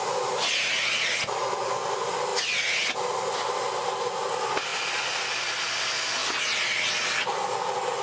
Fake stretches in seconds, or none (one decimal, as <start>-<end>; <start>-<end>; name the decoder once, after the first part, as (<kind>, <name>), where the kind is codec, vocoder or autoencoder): none

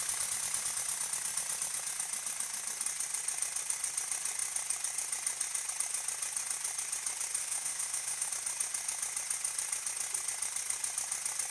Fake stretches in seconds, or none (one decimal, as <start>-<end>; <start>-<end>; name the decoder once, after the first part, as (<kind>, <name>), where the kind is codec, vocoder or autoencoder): 7.4-8.3 (autoencoder, DAC-VAE)

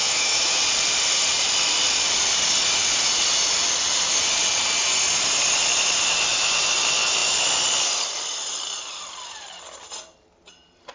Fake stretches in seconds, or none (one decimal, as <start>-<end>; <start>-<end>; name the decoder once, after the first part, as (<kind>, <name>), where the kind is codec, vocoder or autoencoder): 0.0-0.6 (autoencoder, DAC-VAE)